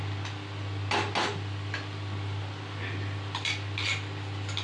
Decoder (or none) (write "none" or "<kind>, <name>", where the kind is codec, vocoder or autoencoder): none